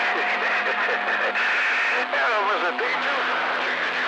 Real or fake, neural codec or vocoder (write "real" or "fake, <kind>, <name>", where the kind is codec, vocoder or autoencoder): real